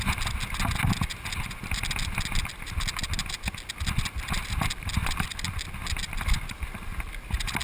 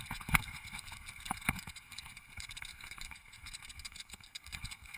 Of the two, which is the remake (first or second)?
second